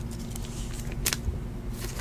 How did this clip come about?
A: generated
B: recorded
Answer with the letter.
B